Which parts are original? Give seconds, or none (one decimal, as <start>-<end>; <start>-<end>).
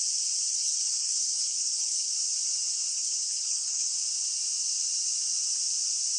0.0-0.5; 2.1-2.9; 3.9-6.2